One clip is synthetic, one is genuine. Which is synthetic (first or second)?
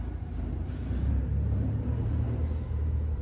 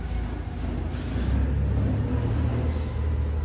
first